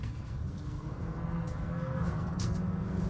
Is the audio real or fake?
fake